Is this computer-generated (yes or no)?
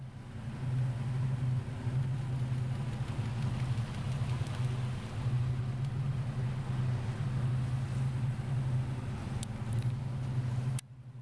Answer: no